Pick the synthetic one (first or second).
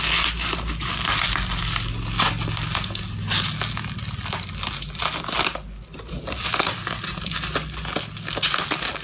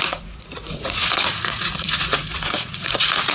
second